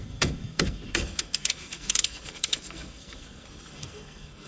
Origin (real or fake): fake